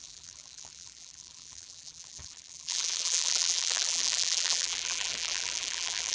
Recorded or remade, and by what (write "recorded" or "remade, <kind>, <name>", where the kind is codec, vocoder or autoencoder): remade, vocoder, BigVGAN v2